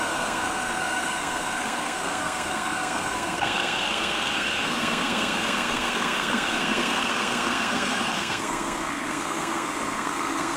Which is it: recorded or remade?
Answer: remade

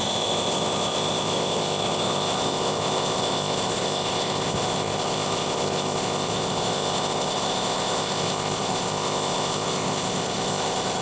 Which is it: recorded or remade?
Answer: remade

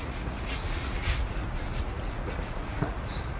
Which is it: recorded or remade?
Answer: remade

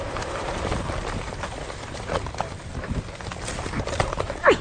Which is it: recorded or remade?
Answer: recorded